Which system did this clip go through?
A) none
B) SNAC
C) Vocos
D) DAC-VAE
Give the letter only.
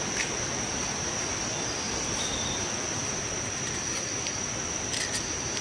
A